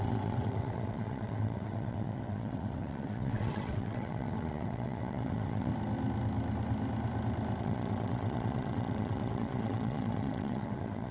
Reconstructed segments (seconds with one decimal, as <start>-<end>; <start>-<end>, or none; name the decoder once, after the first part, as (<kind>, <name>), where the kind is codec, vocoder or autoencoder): 0.0-5.7 (vocoder, WaveNeXt); 7.6-11.1